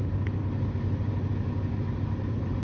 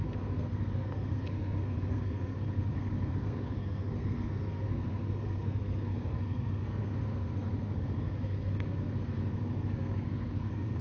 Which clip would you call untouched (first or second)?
first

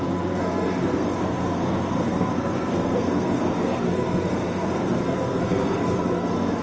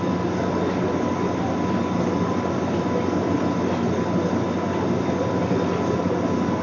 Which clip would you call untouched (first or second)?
second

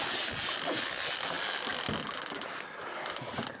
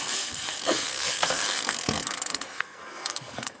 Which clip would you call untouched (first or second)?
first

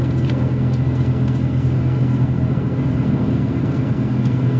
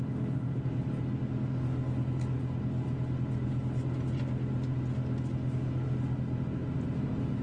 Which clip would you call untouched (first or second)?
second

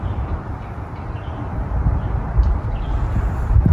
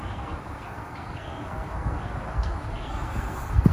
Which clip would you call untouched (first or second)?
first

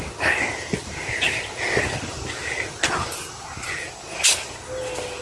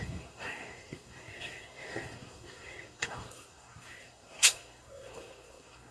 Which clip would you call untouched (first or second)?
first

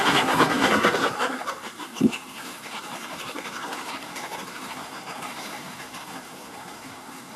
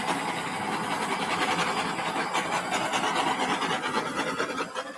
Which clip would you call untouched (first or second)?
second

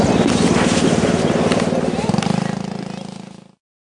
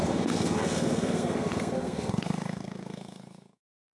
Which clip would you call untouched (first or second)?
first